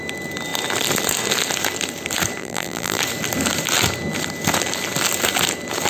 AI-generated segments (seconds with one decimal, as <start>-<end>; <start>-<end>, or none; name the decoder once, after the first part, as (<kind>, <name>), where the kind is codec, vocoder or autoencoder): 2.4-3.0 (vocoder, BigVGAN v2)